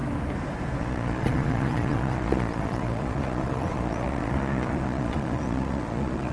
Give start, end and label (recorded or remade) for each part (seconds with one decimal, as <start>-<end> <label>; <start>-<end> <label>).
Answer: 0.0-0.8 recorded; 0.8-6.3 remade